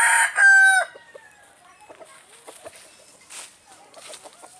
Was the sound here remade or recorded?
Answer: recorded